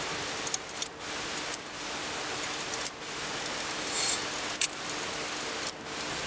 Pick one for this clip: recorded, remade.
recorded